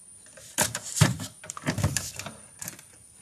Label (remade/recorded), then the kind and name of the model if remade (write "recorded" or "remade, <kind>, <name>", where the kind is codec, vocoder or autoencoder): remade, vocoder, BigVGAN v2